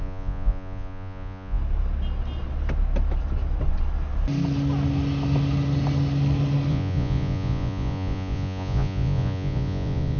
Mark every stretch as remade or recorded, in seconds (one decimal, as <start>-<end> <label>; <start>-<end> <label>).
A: 0.0-1.6 remade; 1.6-6.7 recorded; 6.7-10.2 remade